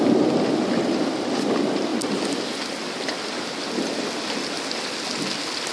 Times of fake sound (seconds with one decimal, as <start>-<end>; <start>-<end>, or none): none